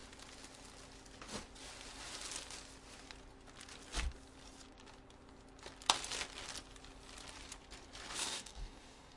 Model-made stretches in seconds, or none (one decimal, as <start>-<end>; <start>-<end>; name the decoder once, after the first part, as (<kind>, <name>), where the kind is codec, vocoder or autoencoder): 8.2-9.2 (codec, DAC)